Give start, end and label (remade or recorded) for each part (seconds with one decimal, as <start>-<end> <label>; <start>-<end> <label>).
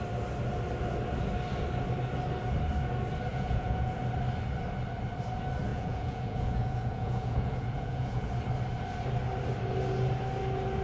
0.0-3.3 recorded; 3.3-4.0 remade; 4.0-5.7 recorded; 5.7-8.3 remade; 8.3-10.8 recorded